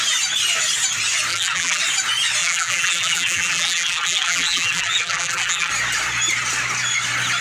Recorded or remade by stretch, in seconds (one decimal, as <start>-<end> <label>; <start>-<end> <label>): 0.0-1.3 recorded; 1.3-1.8 remade; 1.8-2.4 recorded; 2.4-5.7 remade; 5.7-7.4 recorded